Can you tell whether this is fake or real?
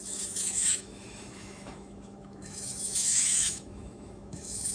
fake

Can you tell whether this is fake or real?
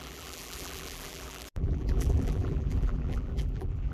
fake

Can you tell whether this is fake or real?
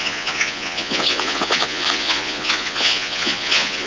fake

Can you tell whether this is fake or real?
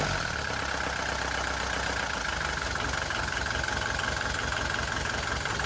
real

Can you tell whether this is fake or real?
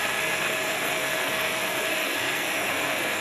fake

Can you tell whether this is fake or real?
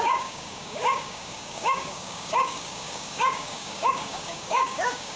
fake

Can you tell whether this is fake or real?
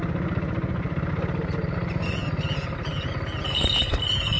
real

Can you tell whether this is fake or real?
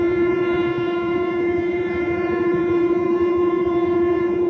fake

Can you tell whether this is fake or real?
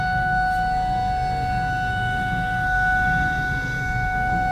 fake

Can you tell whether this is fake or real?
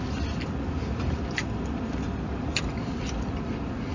real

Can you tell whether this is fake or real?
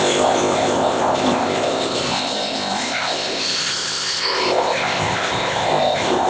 fake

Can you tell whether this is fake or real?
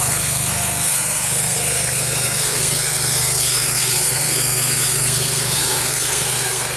fake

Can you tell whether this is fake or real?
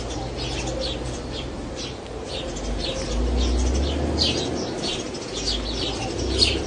real